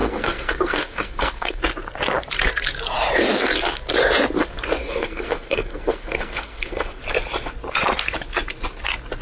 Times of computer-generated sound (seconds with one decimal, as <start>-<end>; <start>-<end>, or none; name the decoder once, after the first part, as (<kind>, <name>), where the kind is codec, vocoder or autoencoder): 0.0-1.6 (codec, SNAC); 4.8-7.0